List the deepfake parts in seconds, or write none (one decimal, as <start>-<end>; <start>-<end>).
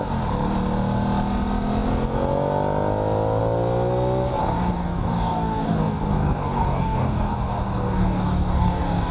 4.4-9.1